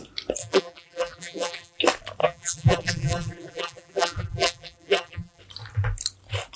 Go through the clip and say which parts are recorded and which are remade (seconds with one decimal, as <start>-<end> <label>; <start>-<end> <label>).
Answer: 0.0-0.4 recorded; 0.4-1.8 remade; 1.8-2.2 recorded; 2.2-5.4 remade; 5.4-6.6 recorded